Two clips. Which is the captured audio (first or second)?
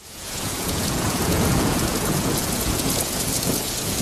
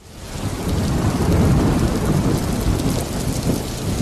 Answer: second